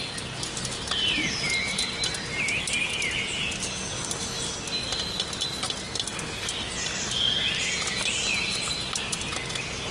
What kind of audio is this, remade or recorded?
recorded